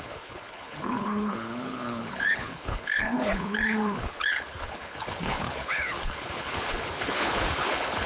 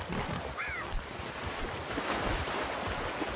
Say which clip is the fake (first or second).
first